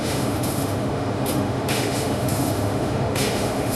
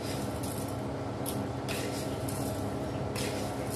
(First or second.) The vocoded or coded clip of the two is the first